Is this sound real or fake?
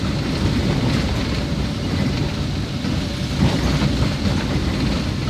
real